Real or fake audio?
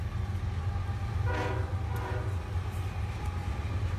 real